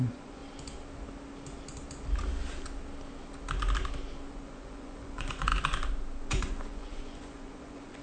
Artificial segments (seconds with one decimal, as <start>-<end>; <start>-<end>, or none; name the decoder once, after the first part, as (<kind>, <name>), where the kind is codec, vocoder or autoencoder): 0.0-0.4 (vocoder, Vocos); 4.3-5.5; 6.3-8.0